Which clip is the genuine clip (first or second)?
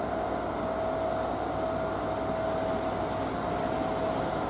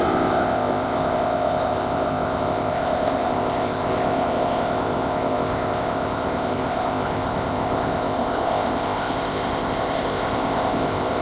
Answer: first